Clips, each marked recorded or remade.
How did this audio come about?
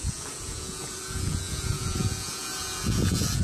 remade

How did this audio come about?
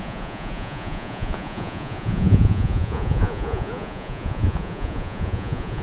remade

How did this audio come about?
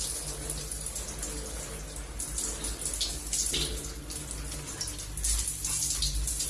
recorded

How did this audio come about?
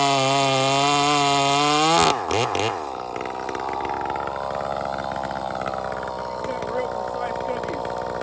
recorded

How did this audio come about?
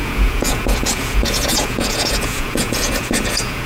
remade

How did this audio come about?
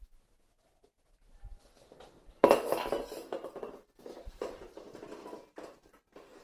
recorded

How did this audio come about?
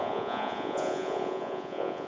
remade